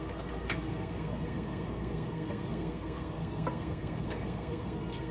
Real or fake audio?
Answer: fake